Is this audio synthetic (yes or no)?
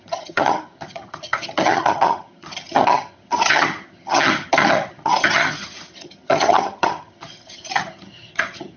yes